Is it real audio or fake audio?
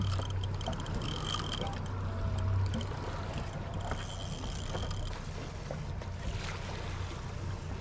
real